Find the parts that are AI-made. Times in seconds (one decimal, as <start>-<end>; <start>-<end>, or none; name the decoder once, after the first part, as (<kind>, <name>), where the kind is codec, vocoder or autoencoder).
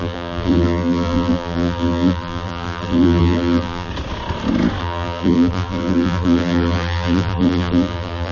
0.0-3.9 (vocoder, BigVGAN v2); 4.8-8.3